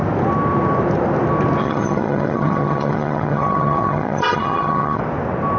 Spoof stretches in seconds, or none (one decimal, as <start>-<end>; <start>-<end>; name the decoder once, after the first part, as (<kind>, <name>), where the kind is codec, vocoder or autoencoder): 1.6-5.0 (vocoder, HiFi-GAN)